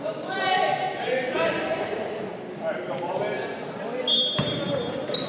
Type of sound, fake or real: real